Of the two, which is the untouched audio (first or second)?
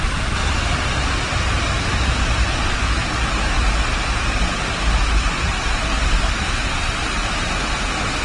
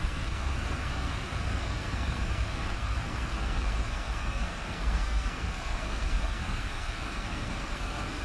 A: first